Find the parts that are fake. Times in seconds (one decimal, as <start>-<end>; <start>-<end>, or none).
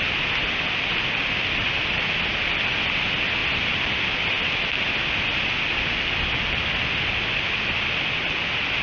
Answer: none